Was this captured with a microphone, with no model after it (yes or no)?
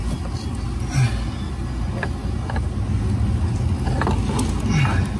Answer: yes